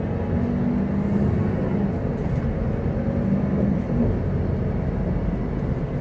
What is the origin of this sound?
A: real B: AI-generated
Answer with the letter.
A